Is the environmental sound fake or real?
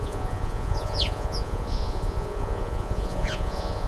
fake